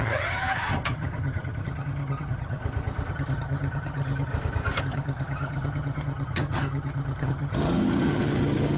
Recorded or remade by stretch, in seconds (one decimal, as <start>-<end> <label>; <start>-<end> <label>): 0.0-2.6 remade; 2.6-3.1 recorded; 3.1-4.3 remade; 4.3-4.8 recorded; 4.8-8.8 remade